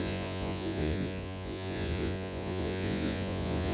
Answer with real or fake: fake